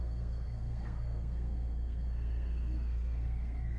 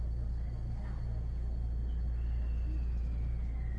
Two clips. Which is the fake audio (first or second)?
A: first